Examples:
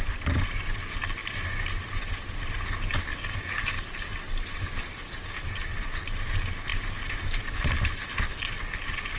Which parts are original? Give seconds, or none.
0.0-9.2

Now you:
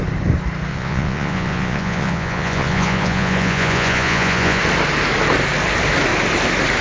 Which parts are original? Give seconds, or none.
0.0-0.7; 4.6-6.8

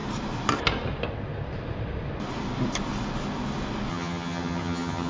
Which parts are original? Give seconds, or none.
0.0-3.9

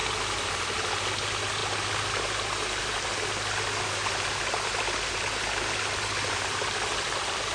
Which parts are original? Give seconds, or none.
0.0-7.5

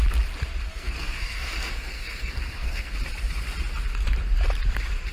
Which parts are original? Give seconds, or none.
0.0-0.7; 2.9-5.1

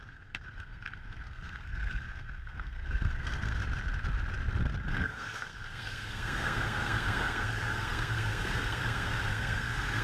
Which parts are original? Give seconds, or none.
3.6-4.9

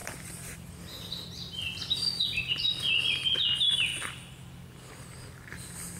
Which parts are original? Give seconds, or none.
0.7-2.3; 2.9-6.0

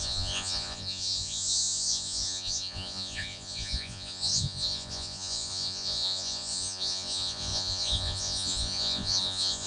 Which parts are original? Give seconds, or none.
none